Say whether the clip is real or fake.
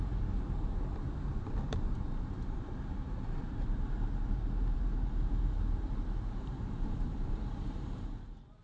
fake